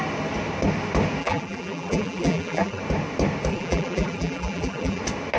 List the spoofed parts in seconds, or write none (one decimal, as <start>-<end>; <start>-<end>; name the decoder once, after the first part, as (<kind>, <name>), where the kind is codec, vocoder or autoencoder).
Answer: 1.2-2.8 (vocoder, BigVGAN v2); 3.5-5.0